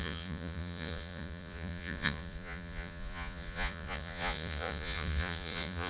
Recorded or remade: remade